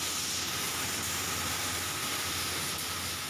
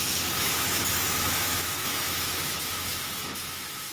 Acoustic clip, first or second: first